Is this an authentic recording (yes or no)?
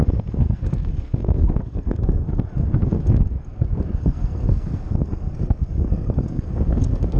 no